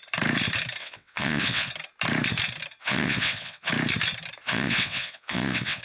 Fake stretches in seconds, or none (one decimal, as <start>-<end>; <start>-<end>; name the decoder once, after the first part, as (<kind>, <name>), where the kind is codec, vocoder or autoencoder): 0.8-1.7 (vocoder, WaveNeXt); 2.8-3.7; 4.4-5.8